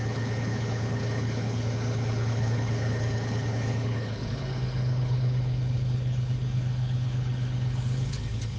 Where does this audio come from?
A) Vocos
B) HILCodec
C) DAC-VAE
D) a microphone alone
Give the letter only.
B